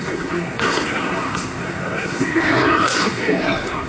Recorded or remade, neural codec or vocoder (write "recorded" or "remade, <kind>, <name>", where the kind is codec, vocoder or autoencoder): remade, codec, SNAC